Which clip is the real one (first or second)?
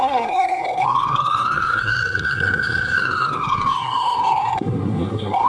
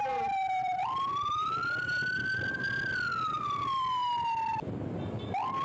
second